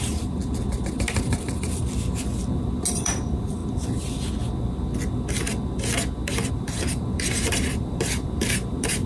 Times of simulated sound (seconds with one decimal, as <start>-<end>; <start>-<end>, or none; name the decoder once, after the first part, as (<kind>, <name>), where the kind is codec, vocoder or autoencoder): 0.0-0.4 (vocoder, BigVGAN v2); 1.0-1.8; 2.9-3.6; 6.5-9.1